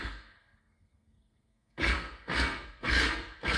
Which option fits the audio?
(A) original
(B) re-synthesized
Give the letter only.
B